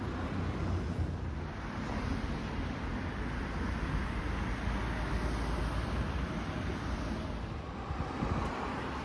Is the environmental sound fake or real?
real